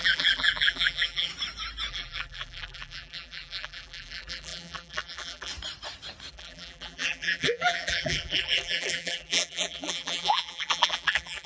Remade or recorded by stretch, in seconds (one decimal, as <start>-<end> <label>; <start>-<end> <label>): 0.0-1.3 remade; 1.3-1.9 recorded; 1.9-5.5 remade; 5.5-6.3 recorded; 6.3-11.5 remade